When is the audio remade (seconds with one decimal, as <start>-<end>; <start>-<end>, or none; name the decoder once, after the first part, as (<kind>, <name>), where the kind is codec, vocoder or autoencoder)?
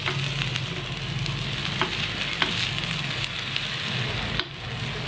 none